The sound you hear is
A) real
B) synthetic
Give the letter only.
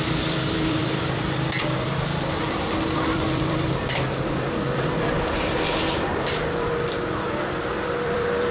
B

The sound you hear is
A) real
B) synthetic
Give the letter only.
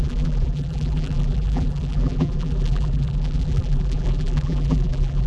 B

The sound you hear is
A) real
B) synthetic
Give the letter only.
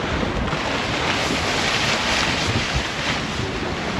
A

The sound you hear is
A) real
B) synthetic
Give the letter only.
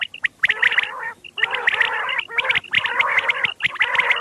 A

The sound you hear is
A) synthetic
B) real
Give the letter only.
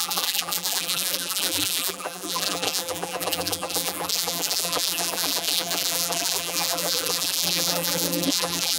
A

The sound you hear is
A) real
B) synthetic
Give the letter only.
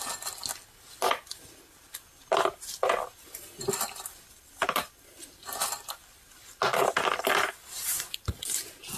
A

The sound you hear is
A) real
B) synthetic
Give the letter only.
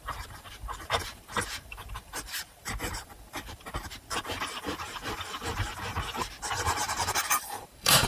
B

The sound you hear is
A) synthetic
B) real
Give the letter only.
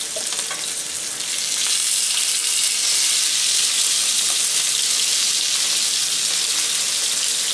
B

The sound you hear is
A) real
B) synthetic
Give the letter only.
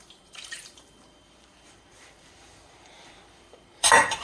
B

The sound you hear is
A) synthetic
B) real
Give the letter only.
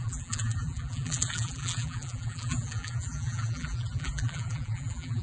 A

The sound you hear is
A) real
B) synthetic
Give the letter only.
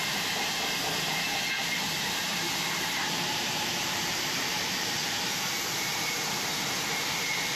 B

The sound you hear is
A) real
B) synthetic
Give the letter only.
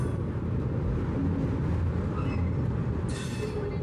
A